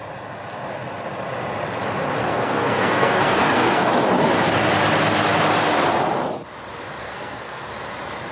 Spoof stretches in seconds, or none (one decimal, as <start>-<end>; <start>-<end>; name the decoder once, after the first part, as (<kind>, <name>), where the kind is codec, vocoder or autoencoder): 2.2-3.9 (codec, SNAC); 7.0-7.7